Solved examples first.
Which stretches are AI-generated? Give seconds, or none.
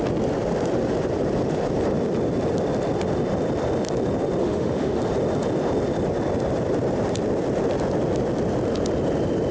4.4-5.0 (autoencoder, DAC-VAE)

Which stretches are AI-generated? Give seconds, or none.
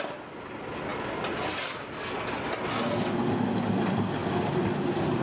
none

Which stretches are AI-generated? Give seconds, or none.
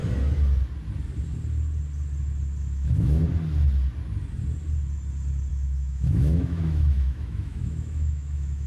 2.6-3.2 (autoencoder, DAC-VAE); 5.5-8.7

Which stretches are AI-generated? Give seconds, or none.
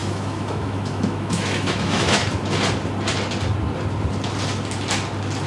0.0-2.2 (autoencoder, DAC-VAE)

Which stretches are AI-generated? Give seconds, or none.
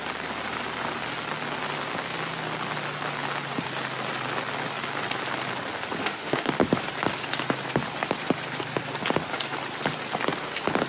6.0-6.5 (autoencoder, DAC-VAE)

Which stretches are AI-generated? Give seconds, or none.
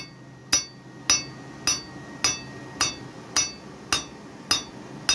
none